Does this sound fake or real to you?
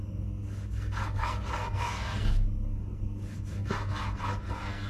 fake